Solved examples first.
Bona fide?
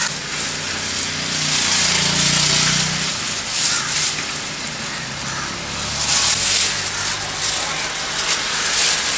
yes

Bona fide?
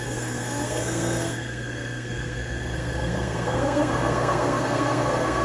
no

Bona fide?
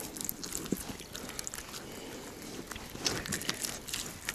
yes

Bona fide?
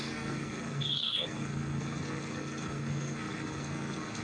no